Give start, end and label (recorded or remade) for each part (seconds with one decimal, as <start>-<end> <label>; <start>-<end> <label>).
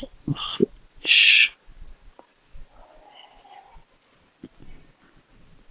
0.0-5.7 recorded